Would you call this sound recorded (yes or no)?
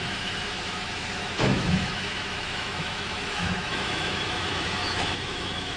no